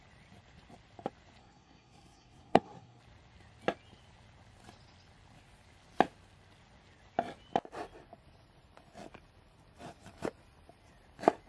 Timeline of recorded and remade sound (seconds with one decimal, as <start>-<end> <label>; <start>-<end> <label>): 0.0-1.4 recorded; 1.4-3.0 remade; 3.0-11.5 recorded